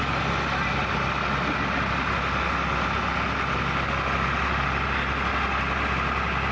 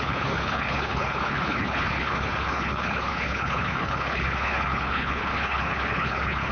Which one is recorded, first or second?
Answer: first